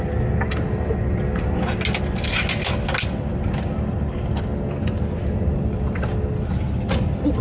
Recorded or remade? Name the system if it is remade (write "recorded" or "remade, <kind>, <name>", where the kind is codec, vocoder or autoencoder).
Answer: recorded